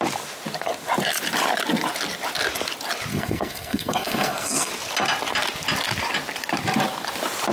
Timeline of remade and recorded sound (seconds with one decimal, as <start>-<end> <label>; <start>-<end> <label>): 0.0-3.1 recorded; 3.1-4.7 remade; 4.7-7.5 recorded